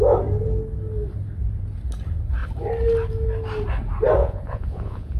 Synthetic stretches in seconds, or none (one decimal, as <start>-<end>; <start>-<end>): 4.2-5.2